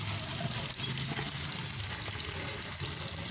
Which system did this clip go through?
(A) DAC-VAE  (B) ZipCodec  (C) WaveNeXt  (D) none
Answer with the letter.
D